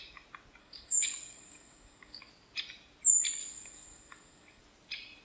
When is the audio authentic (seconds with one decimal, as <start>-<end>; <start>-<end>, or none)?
0.0-0.6; 2.3-3.4; 4.6-5.2